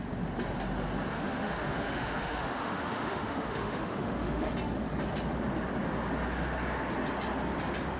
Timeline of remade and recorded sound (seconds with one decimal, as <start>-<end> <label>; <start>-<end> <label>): 0.0-1.1 recorded; 1.1-4.5 remade; 4.5-8.0 recorded